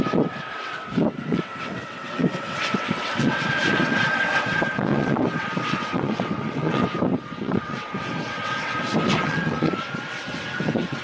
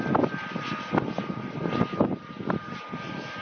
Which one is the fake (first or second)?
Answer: first